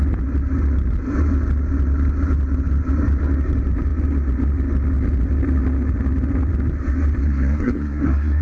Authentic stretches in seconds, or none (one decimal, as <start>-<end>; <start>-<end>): 0.0-7.2